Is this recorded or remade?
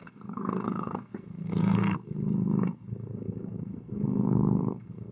remade